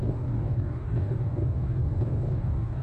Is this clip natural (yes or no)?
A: no